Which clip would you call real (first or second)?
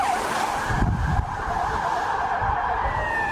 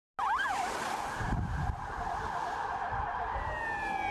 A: second